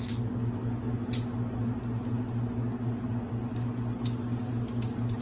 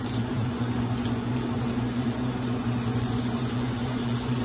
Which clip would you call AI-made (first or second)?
second